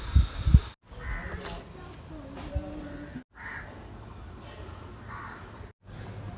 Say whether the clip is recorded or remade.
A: recorded